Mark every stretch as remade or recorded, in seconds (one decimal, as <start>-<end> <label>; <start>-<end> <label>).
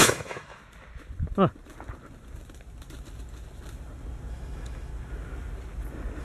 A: 0.0-0.6 remade; 0.6-4.3 recorded; 4.3-4.9 remade; 4.9-6.2 recorded